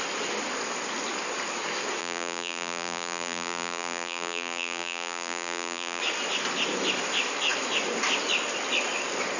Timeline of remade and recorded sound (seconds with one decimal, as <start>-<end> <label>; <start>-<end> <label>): 0.0-2.0 recorded; 2.0-6.0 remade; 6.0-9.4 recorded